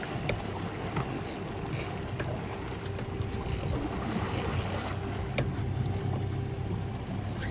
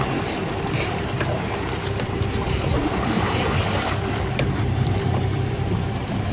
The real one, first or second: first